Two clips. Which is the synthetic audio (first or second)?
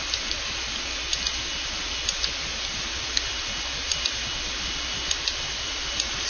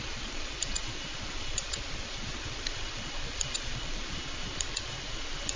second